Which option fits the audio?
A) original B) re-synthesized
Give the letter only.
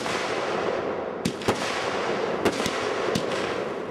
A